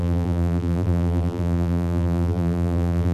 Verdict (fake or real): fake